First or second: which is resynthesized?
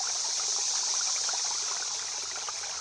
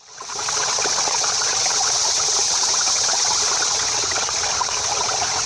second